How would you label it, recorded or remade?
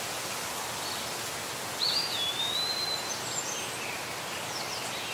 recorded